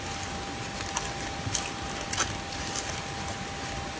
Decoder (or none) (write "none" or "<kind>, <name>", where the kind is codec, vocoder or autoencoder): none